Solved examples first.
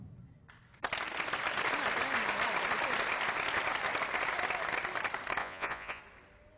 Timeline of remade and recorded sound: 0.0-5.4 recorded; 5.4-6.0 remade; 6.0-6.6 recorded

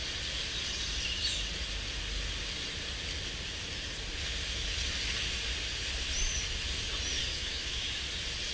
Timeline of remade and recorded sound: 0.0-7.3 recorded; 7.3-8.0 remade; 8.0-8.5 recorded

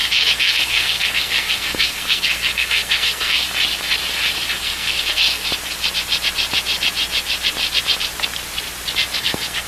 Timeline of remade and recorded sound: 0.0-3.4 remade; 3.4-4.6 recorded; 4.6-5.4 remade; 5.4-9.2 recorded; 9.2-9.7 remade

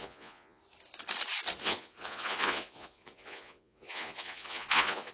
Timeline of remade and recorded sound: 0.0-0.6 remade; 0.6-1.6 recorded; 1.6-5.1 remade

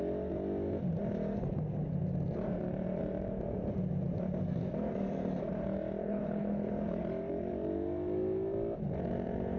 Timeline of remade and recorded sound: 0.0-6.0 recorded; 6.0-6.7 remade; 6.7-9.6 recorded

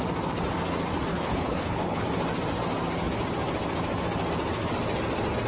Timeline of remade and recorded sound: 0.0-1.1 recorded; 1.1-2.0 remade; 2.0-5.5 recorded